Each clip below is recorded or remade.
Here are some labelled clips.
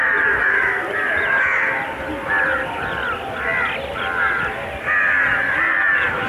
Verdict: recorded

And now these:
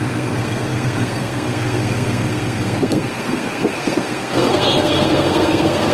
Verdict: remade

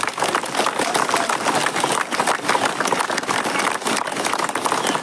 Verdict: recorded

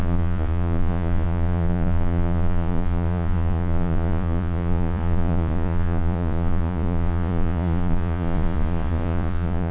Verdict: remade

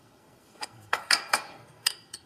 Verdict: remade